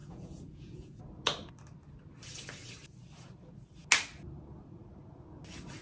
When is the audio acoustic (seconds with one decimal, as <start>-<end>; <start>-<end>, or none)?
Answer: 1.0-5.8